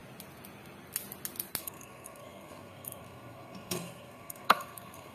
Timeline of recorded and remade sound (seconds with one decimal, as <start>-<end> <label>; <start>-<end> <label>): 0.0-1.6 recorded; 1.6-5.1 remade